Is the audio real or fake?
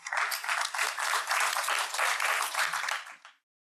fake